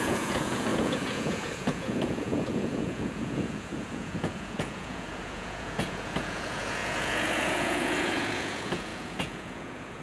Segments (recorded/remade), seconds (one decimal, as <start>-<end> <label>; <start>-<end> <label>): 0.0-10.0 remade